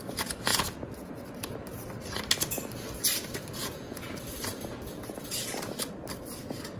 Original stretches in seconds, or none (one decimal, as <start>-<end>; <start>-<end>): 0.0-0.5; 1.1-3.6; 4.2-6.8

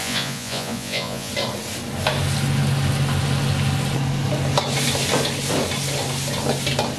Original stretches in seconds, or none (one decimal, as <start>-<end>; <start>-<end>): 1.3-7.0

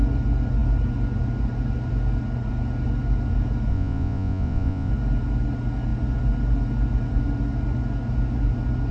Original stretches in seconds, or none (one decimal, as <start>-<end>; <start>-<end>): 0.0-3.7; 4.9-8.9

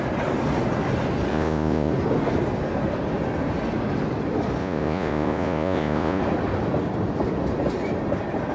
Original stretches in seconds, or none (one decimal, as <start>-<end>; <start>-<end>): 0.0-1.3; 1.9-4.6; 6.2-8.5

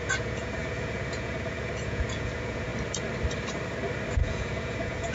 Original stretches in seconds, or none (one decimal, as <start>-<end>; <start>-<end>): 2.7-4.2

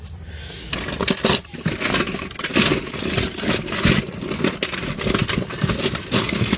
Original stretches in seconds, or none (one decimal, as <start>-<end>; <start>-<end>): 0.0-6.6

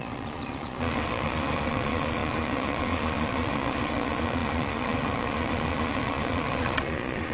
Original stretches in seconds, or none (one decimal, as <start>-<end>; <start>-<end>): none

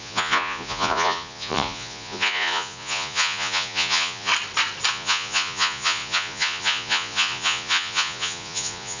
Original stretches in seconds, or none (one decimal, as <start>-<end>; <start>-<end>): 4.3-4.9